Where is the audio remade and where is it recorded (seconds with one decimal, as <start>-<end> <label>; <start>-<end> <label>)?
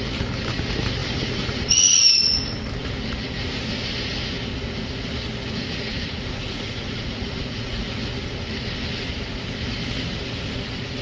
0.0-1.0 recorded; 1.0-2.4 remade; 2.4-5.9 recorded; 5.9-7.9 remade; 7.9-11.0 recorded